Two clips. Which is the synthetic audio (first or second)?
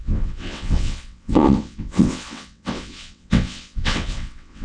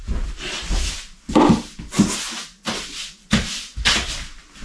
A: first